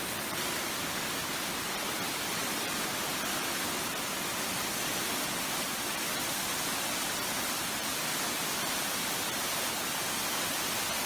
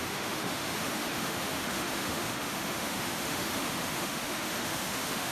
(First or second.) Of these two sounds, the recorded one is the first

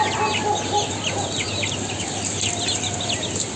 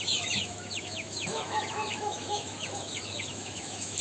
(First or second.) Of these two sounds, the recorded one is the first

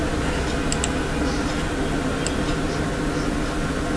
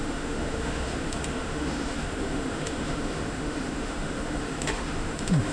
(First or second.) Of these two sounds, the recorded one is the first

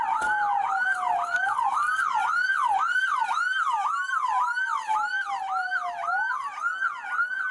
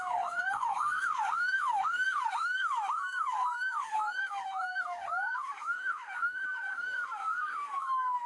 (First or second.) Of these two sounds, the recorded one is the first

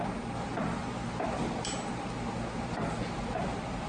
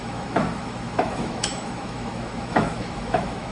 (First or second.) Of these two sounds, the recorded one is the first